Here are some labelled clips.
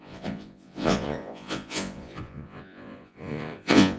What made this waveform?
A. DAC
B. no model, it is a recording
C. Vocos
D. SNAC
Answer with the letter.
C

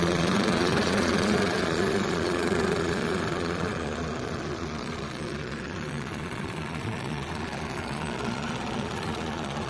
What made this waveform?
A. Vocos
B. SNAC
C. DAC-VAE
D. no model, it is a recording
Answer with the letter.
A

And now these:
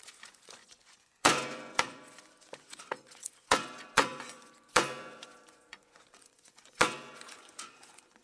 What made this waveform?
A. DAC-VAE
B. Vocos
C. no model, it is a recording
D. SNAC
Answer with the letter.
B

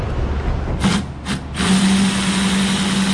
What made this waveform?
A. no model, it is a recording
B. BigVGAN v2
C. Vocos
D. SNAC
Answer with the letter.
A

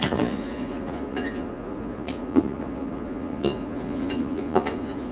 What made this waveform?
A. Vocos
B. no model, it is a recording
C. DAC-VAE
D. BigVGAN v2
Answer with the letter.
A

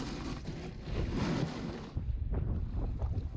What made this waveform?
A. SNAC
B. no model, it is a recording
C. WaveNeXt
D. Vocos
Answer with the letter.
B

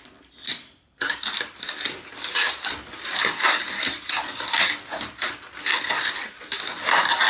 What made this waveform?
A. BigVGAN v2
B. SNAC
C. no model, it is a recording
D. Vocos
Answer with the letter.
C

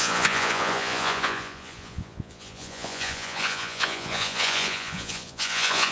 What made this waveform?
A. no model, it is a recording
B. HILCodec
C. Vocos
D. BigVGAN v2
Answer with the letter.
C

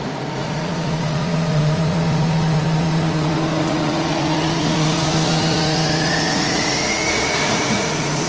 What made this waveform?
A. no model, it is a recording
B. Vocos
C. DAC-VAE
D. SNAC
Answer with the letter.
B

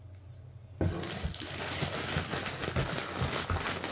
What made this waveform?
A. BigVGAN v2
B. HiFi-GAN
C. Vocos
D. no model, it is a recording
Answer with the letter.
D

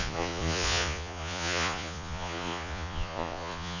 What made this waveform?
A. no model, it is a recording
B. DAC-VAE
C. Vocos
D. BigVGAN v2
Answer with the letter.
C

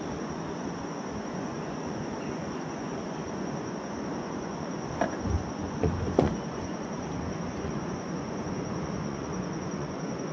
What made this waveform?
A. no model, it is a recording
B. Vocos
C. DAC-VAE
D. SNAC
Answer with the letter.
B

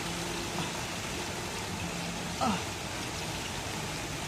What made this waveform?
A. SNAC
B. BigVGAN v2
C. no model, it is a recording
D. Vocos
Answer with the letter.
C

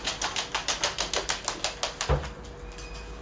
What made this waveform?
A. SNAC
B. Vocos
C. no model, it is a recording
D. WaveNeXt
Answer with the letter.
C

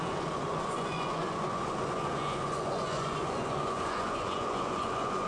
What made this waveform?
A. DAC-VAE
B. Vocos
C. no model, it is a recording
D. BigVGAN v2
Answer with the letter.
B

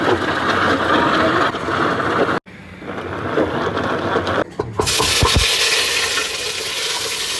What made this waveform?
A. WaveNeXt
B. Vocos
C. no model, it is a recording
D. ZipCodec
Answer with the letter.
C